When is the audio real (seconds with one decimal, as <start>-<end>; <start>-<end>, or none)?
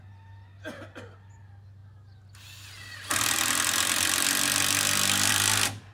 0.0-5.9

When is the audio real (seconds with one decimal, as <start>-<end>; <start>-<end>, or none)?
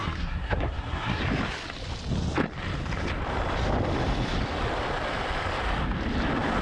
1.2-6.6